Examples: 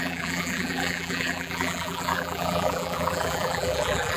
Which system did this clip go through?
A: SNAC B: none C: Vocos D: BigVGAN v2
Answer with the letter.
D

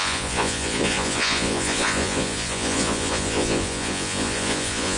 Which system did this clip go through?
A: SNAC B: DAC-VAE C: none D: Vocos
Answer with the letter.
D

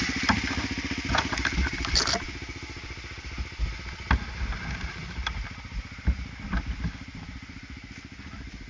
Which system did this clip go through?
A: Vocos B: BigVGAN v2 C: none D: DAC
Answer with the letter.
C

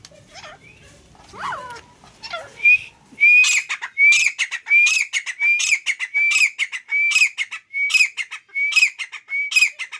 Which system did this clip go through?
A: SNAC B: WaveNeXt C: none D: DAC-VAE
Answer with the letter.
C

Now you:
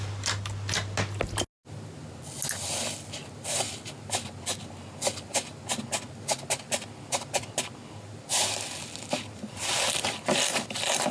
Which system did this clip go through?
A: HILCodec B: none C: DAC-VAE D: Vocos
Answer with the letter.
B